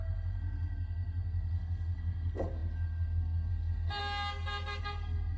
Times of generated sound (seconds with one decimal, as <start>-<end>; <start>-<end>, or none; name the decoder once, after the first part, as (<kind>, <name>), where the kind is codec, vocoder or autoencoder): 0.0-4.0 (codec, SNAC); 4.8-5.4